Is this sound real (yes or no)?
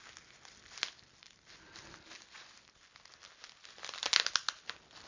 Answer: yes